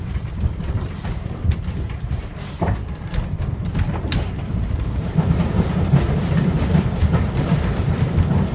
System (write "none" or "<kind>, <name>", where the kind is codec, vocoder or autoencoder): vocoder, BigVGAN v2